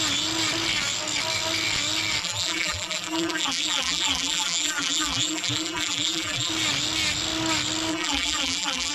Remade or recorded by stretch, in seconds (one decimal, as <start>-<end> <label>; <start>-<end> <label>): 0.0-2.2 recorded; 2.2-6.5 remade; 6.5-7.9 recorded; 7.9-8.9 remade